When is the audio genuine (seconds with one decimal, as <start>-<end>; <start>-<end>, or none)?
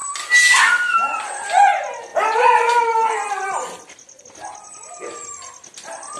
0.0-2.1; 4.2-6.2